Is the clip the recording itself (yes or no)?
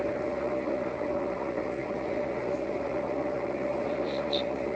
no